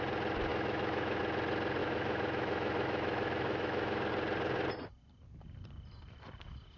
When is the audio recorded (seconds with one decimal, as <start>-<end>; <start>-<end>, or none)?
0.0-0.5; 1.2-1.8; 4.1-6.8

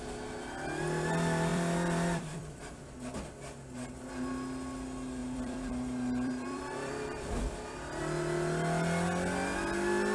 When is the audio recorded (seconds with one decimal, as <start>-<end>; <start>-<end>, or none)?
0.0-1.5; 2.6-5.2; 8.0-10.1